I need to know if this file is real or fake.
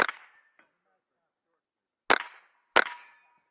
real